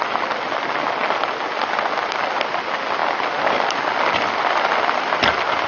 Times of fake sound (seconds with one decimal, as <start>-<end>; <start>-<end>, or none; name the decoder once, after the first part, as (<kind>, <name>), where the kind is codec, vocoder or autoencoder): none